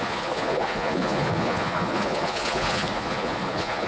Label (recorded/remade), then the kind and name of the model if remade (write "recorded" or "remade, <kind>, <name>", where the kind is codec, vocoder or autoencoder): remade, vocoder, Vocos